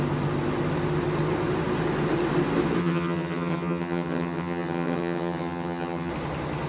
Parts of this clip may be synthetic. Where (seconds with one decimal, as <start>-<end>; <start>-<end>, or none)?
2.8-6.1